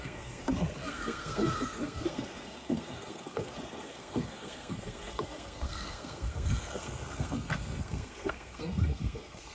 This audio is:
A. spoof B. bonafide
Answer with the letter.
A